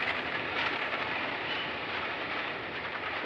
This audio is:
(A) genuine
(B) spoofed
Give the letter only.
B